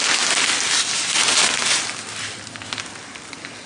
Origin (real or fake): real